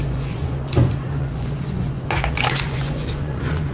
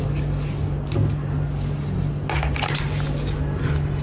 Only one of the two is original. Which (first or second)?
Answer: second